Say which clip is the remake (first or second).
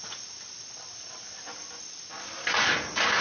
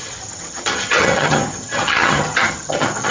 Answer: second